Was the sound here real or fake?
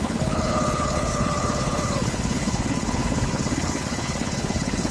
fake